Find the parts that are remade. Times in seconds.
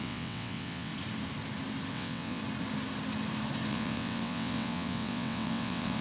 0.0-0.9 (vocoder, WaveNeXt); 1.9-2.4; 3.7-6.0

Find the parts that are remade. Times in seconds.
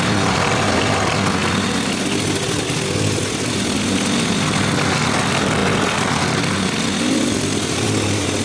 none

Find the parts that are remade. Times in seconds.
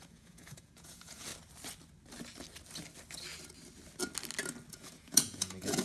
0.0-1.3 (vocoder, Vocos); 4.7-5.8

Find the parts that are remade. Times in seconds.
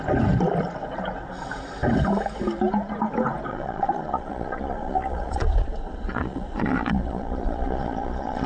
3.5-8.5 (vocoder, Vocos)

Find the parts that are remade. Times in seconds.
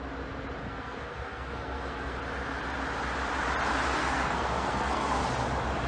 0.6-2.2 (codec, SNAC); 4.0-5.2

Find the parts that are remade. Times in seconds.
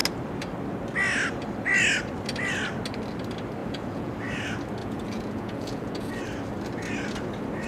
3.6-4.1 (vocoder, Vocos); 4.8-6.1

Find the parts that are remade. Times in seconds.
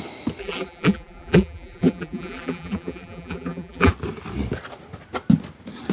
0.4-3.9 (vocoder, BigVGAN v2)